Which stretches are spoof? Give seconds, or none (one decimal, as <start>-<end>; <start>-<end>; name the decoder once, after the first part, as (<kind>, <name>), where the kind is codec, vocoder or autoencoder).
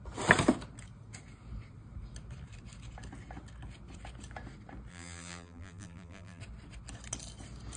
4.9-6.4 (vocoder, BigVGAN v2)